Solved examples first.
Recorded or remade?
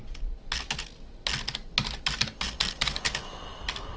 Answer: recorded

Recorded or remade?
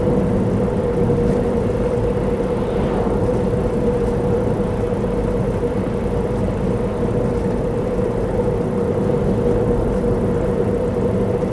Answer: recorded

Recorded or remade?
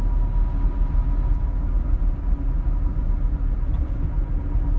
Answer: recorded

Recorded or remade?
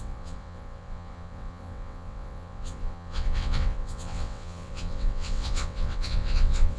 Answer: remade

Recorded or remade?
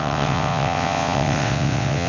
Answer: remade